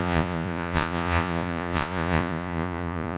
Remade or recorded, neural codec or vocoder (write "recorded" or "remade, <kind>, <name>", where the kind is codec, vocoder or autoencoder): remade, vocoder, Vocos